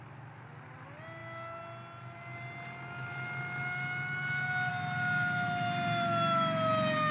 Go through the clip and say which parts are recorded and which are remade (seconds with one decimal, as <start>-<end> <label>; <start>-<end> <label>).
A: 0.0-7.1 recorded